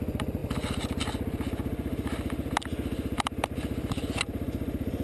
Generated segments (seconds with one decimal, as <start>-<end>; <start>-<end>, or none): none